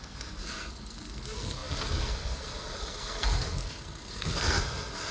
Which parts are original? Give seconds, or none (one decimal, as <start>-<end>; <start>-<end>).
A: none